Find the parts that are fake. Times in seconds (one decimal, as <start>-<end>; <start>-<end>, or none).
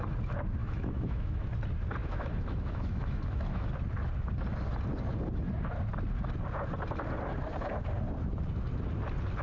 0.6-1.5; 2.0-3.7